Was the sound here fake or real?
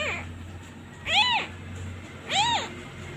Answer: real